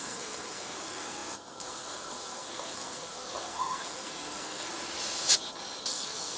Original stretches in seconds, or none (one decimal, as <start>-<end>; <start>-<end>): 4.7-5.9